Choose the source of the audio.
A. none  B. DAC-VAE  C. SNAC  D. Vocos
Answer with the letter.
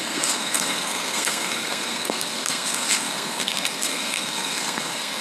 C